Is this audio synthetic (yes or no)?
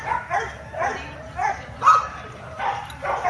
no